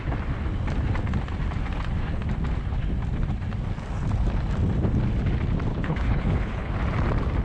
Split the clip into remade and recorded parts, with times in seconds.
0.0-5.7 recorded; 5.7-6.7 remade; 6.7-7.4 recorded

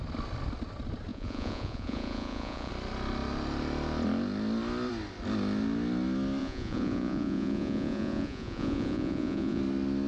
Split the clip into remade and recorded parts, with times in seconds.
0.0-1.1 recorded; 1.1-2.7 remade; 2.7-6.4 recorded; 6.4-9.6 remade; 9.6-10.1 recorded

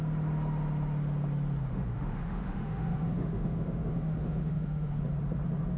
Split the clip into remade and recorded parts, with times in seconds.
0.0-1.6 recorded; 1.6-5.0 remade; 5.0-5.8 recorded